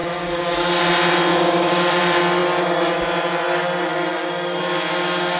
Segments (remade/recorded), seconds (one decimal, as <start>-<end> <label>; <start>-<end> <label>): 0.0-0.8 remade; 0.8-1.3 recorded; 1.3-2.0 remade; 2.0-3.9 recorded; 3.9-4.6 remade; 4.6-5.4 recorded